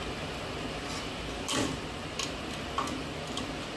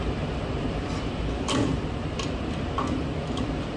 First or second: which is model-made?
second